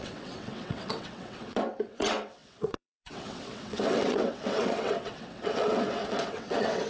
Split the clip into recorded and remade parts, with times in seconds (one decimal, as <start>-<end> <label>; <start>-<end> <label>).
0.0-6.9 remade